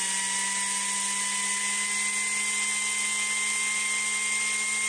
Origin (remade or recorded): recorded